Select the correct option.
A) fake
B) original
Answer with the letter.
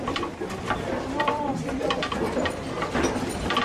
A